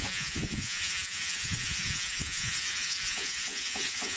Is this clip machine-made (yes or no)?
yes